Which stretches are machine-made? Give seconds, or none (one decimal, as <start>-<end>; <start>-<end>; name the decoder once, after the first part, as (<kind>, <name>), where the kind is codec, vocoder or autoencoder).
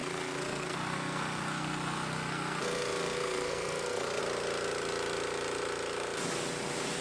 0.0-4.2 (codec, SNAC)